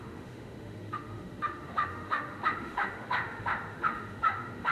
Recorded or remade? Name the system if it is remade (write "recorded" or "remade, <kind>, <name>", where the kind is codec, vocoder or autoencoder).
remade, autoencoder, DAC-VAE